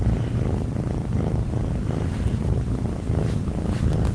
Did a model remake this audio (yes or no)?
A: no